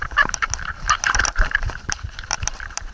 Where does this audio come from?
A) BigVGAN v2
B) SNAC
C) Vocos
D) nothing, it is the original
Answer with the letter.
A